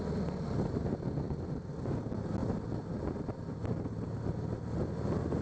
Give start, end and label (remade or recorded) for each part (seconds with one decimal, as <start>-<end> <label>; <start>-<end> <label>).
0.0-5.4 recorded